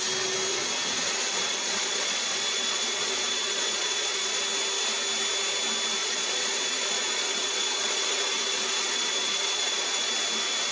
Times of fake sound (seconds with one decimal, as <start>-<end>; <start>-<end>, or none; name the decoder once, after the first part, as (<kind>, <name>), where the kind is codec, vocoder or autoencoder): 0.5-4.4 (vocoder, Vocos); 6.0-10.1